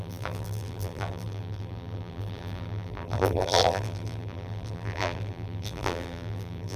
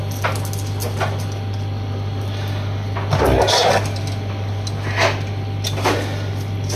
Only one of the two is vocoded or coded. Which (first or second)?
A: first